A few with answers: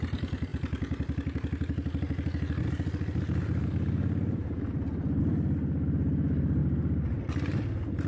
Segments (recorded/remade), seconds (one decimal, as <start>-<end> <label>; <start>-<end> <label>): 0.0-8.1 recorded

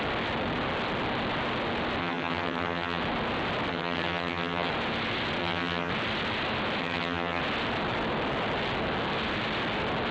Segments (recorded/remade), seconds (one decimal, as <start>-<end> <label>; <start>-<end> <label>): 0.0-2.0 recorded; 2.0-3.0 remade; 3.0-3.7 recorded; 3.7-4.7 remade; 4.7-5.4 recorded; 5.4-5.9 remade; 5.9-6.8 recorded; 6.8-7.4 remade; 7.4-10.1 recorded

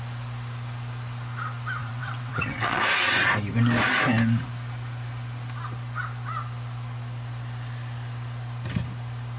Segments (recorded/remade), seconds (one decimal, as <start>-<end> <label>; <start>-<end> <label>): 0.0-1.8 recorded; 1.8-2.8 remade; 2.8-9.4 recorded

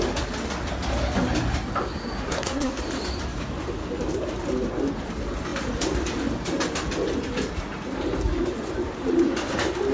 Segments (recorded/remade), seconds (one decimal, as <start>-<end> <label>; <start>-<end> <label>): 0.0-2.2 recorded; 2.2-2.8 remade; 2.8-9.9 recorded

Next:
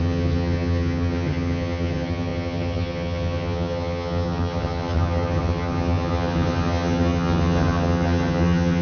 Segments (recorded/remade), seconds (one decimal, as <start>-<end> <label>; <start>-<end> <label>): 0.0-8.8 remade